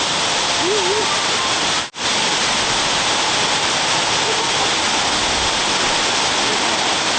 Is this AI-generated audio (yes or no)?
no